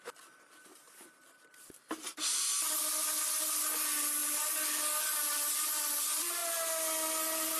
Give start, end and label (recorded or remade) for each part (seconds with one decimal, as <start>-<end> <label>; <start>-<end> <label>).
0.0-7.6 recorded